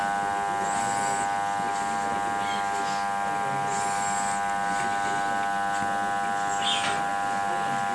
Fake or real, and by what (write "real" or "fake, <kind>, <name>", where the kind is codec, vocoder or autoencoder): real